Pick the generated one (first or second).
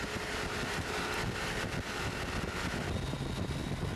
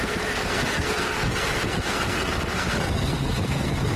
second